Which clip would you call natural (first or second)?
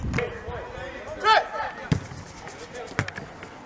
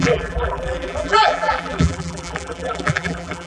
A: first